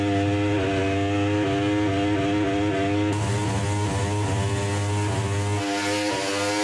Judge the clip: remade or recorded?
recorded